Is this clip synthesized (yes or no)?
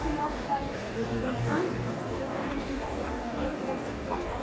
yes